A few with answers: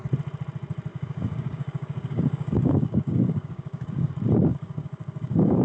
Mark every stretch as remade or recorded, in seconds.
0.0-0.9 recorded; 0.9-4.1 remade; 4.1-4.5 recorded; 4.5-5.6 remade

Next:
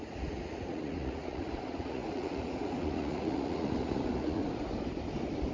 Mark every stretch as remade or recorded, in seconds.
0.0-4.4 remade; 4.4-5.5 recorded

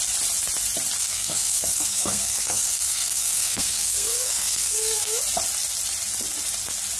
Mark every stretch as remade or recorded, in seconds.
0.0-1.0 recorded; 1.0-5.2 remade; 5.2-7.0 recorded

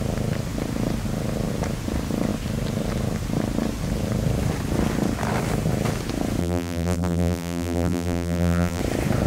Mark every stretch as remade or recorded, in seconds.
0.0-6.4 recorded; 6.4-8.8 remade; 8.8-9.3 recorded

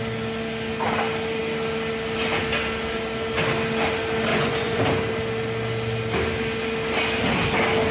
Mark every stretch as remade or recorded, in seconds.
0.0-4.3 recorded; 4.3-4.8 remade; 4.8-7.9 recorded